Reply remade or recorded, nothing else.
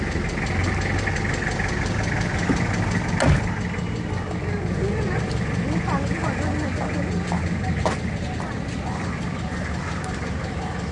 recorded